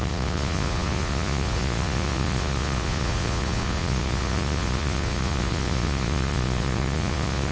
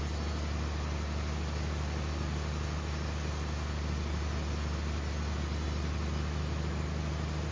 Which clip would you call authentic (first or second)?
second